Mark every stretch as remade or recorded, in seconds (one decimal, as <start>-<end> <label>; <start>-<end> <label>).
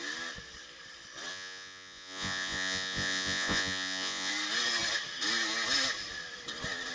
0.0-1.3 recorded; 1.3-4.3 remade; 4.3-6.9 recorded